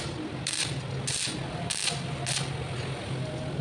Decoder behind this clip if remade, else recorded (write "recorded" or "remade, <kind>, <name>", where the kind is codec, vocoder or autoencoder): recorded